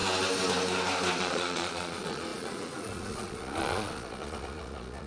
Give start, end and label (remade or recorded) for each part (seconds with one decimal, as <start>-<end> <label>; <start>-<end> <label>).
0.0-1.2 recorded; 1.2-5.1 remade